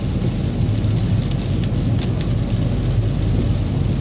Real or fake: real